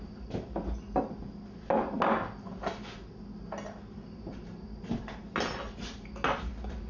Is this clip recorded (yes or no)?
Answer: yes